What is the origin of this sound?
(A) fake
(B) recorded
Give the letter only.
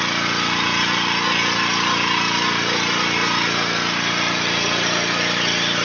B